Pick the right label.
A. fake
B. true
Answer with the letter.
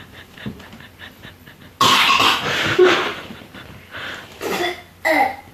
B